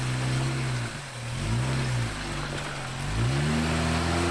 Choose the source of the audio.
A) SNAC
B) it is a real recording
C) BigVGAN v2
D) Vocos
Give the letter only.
B